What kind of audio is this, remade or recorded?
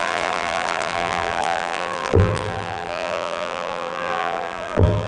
remade